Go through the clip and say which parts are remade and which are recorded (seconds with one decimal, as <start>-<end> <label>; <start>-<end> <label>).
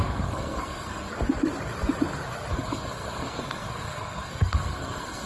0.0-1.1 remade; 1.1-2.5 recorded; 2.5-5.3 remade